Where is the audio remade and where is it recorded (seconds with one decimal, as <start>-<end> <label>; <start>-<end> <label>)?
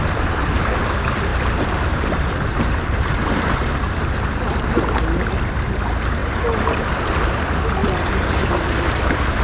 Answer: 0.0-1.3 recorded; 1.3-4.7 remade; 4.7-7.8 recorded; 7.8-8.8 remade; 8.8-9.4 recorded